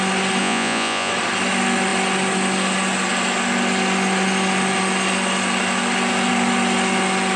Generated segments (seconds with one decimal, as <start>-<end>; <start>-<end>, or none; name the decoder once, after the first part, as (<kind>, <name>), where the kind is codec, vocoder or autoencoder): 0.4-1.1 (vocoder, Vocos)